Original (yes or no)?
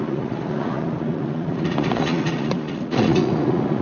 no